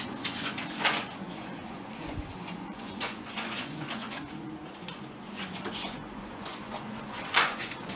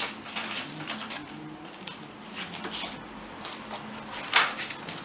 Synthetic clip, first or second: first